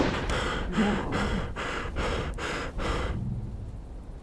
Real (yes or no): yes